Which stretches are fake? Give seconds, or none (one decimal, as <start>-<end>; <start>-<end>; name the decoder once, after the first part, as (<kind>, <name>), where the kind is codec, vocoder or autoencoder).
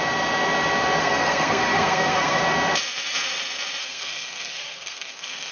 1.0-2.4 (codec, SNAC); 3.8-5.5